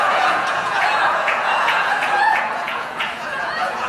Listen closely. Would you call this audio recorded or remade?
remade